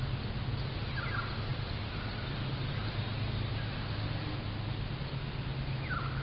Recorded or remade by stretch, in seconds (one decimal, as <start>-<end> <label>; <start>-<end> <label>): 0.0-6.2 recorded